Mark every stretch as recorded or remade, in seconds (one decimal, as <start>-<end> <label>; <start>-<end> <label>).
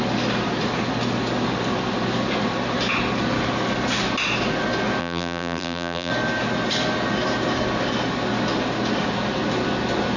0.0-5.0 recorded; 5.0-6.1 remade; 6.1-10.2 recorded